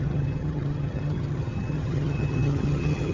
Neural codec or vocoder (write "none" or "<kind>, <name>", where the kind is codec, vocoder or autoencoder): vocoder, HiFi-GAN